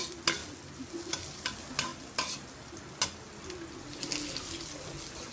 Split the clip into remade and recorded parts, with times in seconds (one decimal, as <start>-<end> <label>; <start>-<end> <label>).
0.0-5.3 recorded